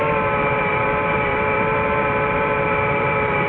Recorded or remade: remade